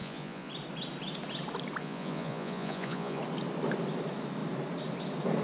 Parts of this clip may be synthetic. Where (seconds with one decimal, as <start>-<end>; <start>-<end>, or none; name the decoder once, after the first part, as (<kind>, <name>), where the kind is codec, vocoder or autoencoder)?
0.0-0.5 (vocoder, Vocos); 1.8-3.2